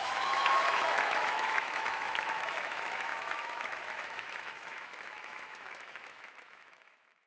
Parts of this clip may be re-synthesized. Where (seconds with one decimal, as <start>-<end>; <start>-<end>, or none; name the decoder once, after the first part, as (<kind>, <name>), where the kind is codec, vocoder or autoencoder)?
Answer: 0.0-7.3 (autoencoder, DAC-VAE)